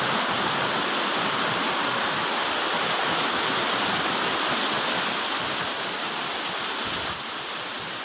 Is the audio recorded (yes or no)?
yes